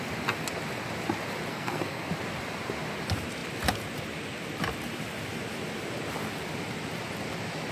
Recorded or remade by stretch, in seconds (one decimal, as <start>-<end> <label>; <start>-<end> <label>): 0.0-1.5 recorded; 1.5-2.1 remade; 2.1-7.7 recorded